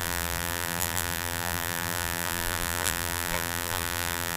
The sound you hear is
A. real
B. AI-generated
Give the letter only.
B